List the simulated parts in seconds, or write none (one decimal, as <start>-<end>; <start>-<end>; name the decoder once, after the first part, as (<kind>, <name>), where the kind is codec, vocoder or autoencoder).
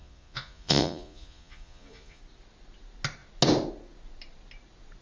0.0-2.2 (vocoder, Vocos)